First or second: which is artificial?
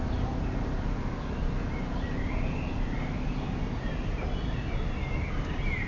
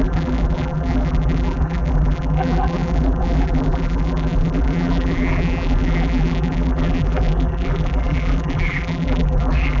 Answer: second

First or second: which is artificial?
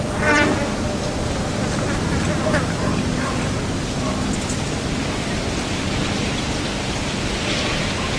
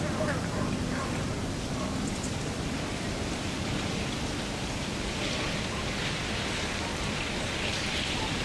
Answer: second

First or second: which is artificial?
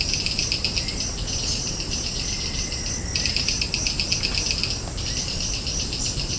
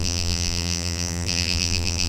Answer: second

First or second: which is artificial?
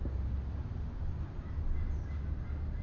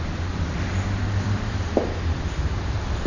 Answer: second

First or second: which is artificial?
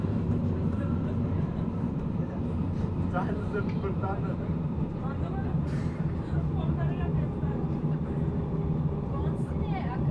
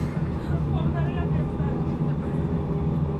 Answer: first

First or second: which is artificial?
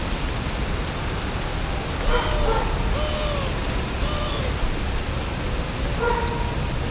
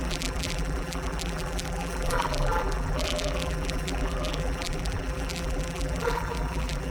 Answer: second